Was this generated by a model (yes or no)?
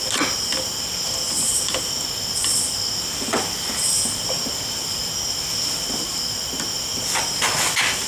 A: no